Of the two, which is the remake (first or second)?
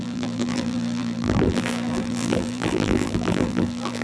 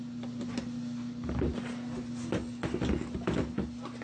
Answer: first